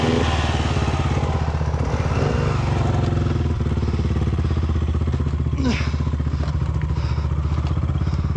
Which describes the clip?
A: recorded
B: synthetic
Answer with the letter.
A